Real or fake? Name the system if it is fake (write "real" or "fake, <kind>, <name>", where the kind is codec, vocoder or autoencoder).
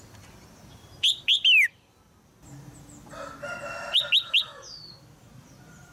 real